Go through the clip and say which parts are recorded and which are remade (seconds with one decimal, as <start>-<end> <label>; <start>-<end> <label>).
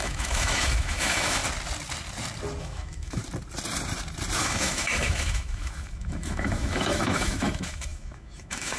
0.0-1.4 remade; 1.4-2.6 recorded; 2.6-3.2 remade; 3.2-4.4 recorded; 4.4-8.8 remade